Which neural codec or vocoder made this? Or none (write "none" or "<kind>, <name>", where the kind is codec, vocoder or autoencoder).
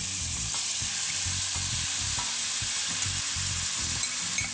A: none